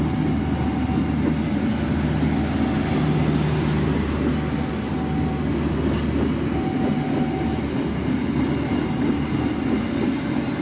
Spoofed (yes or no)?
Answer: no